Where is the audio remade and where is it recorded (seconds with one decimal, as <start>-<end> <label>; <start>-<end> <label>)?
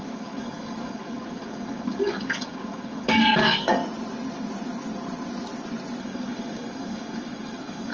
0.0-3.8 remade; 3.8-6.0 recorded; 6.0-7.9 remade